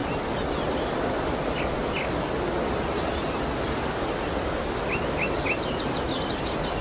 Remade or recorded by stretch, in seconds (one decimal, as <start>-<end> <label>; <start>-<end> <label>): 0.0-6.8 recorded